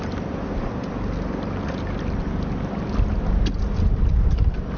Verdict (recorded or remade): recorded